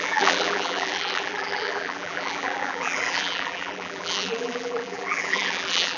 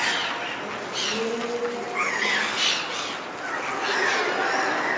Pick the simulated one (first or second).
first